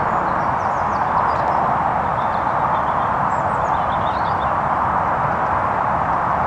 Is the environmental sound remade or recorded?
recorded